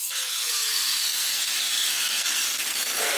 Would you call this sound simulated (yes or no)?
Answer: yes